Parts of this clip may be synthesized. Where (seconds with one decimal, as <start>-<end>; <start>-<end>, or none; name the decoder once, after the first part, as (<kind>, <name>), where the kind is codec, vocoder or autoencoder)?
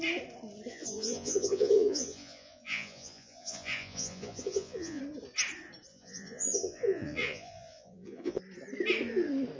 0.7-5.0 (vocoder, Vocos); 5.9-8.4